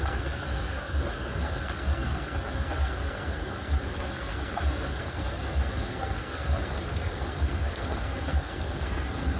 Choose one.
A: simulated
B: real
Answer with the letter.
A